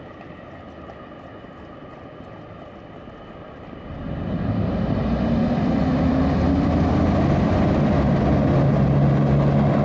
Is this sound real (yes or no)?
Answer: yes